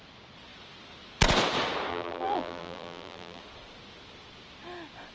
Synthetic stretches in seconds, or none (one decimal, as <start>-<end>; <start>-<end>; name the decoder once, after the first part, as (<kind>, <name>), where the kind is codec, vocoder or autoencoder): 1.9-3.4 (vocoder, BigVGAN v2)